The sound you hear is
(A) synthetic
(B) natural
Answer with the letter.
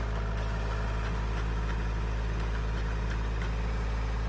B